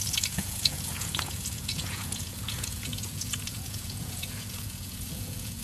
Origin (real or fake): fake